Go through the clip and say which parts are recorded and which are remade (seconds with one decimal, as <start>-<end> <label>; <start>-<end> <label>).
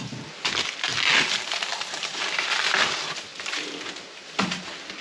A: 0.0-1.7 recorded; 1.7-2.5 remade; 2.5-5.0 recorded